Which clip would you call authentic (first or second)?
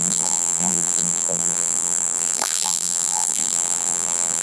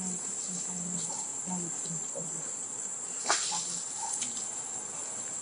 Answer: second